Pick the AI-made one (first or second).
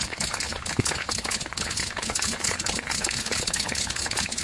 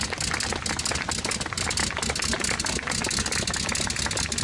first